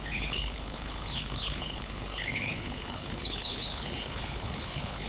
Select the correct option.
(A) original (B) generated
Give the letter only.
B